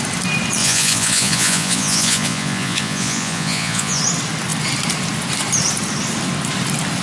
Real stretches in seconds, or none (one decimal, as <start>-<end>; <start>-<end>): 0.0-0.6; 4.0-7.0

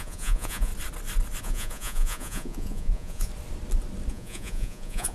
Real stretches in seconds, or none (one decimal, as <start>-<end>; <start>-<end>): 0.7-1.4; 3.3-4.1

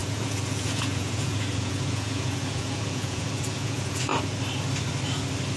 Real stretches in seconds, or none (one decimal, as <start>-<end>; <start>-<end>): 4.1-5.6

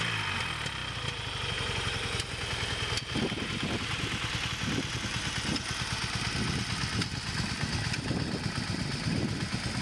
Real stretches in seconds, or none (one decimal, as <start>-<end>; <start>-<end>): 0.0-9.8

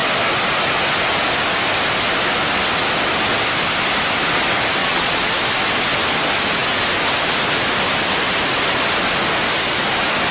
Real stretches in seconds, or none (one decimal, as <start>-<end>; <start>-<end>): 0.0-4.8; 5.3-10.3

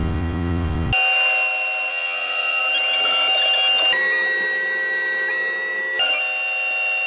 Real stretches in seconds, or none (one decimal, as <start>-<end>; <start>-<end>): 0.9-1.9; 2.6-7.1

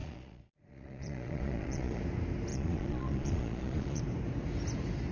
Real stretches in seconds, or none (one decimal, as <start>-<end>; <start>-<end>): 2.0-2.5; 4.0-5.1

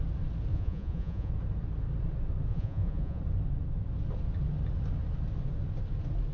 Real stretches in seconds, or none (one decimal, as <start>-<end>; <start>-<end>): 0.0-0.5; 1.3-2.5; 3.2-6.3